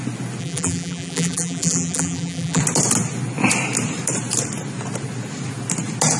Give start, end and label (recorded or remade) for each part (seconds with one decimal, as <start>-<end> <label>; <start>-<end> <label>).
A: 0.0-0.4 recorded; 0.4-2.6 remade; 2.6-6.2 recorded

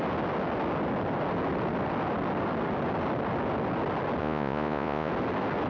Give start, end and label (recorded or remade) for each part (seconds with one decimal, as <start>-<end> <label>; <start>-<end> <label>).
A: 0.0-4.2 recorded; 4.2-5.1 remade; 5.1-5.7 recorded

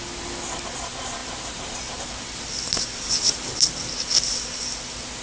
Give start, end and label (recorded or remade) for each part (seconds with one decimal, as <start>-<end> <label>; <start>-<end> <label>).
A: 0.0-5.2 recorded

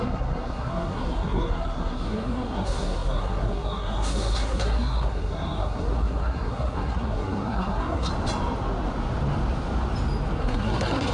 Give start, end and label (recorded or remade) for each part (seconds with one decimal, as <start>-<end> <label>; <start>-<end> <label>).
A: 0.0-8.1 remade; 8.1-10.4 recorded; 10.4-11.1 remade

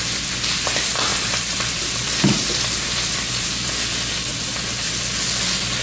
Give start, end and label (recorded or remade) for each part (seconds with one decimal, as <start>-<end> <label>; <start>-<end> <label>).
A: 0.0-1.1 recorded; 1.1-3.7 remade; 3.7-4.3 recorded; 4.3-4.9 remade; 4.9-5.8 recorded

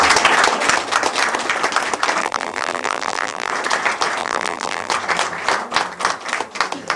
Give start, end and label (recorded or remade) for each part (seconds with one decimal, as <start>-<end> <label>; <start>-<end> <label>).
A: 0.0-2.2 recorded; 2.2-3.5 remade; 3.5-4.2 recorded; 4.2-4.9 remade; 4.9-7.0 recorded

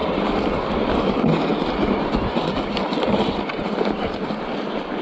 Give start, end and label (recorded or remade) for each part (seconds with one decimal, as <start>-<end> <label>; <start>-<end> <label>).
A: 0.0-5.0 recorded

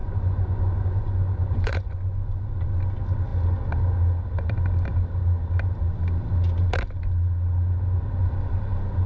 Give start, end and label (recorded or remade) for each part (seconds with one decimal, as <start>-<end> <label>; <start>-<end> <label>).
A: 0.0-2.5 remade; 2.5-9.1 recorded